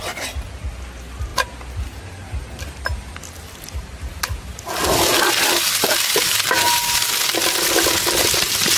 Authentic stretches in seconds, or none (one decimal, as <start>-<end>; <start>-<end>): 0.0-8.8